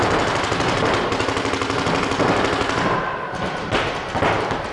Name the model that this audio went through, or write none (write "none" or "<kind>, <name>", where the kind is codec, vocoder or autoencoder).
none